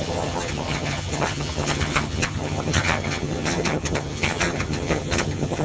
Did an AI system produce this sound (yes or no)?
yes